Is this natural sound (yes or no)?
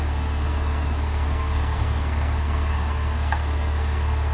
no